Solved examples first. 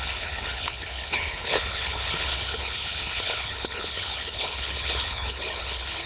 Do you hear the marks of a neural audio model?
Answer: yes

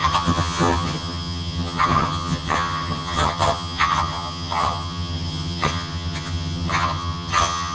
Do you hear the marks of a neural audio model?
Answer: yes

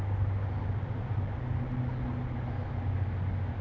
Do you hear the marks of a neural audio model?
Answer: no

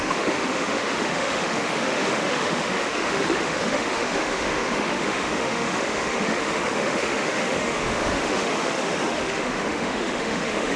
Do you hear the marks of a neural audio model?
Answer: yes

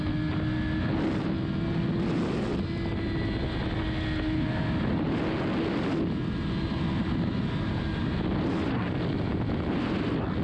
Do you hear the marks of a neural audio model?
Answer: no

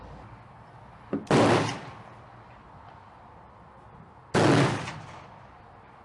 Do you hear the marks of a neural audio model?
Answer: no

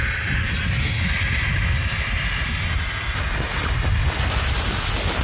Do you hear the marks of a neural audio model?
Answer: no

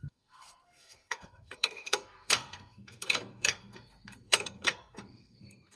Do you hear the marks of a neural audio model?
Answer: yes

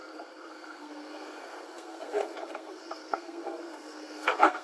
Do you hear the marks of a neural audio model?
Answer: yes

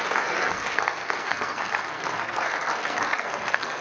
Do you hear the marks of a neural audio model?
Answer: yes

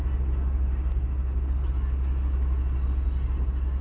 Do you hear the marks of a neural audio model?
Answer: no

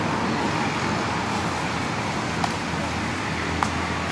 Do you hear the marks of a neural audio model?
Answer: no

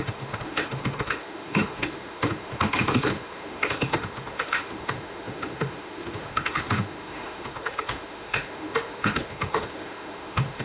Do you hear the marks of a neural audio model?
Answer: yes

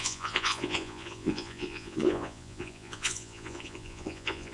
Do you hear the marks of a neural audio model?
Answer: yes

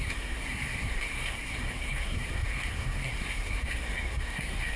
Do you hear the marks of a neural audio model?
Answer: yes